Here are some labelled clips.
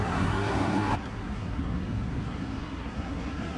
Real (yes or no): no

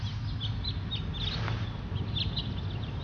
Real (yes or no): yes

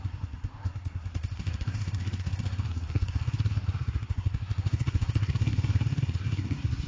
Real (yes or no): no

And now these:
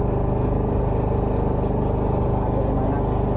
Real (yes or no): yes